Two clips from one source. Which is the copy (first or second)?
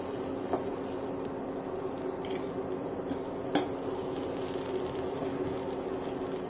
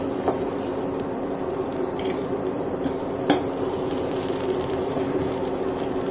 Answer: second